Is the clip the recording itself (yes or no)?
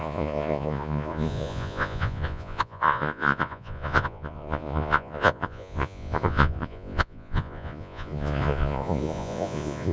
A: no